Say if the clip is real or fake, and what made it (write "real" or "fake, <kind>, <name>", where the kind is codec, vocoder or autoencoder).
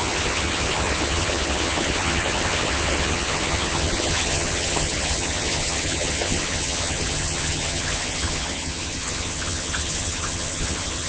fake, vocoder, HiFi-GAN